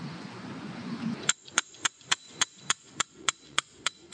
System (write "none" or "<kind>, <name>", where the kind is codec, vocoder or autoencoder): vocoder, Vocos